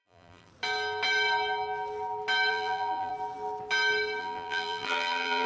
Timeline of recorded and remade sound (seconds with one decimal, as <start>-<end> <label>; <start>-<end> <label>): 0.0-0.5 remade; 0.5-2.5 recorded; 2.5-3.1 remade; 3.1-4.2 recorded; 4.2-5.5 remade